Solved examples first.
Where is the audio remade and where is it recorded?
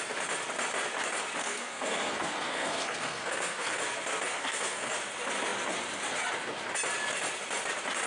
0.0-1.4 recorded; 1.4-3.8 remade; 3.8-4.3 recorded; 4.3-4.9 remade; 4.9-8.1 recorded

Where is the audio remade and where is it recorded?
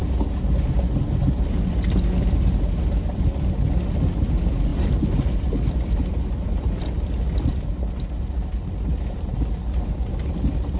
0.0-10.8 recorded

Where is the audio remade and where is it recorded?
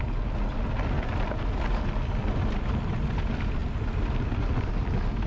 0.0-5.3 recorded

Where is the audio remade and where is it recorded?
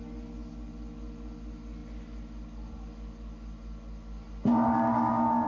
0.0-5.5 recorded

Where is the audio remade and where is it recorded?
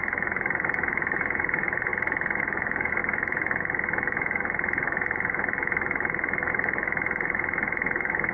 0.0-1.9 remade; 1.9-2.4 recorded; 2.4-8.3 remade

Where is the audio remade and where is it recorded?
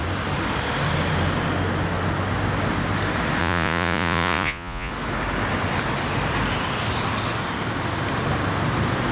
0.0-3.4 recorded; 3.4-4.9 remade; 4.9-9.1 recorded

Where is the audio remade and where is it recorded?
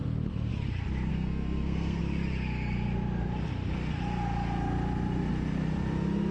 0.0-1.1 recorded; 1.1-2.0 remade; 2.0-6.3 recorded